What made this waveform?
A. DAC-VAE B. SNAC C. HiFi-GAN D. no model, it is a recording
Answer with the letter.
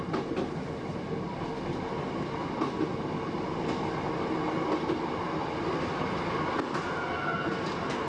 D